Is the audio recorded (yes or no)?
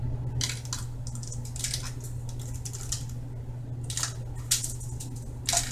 yes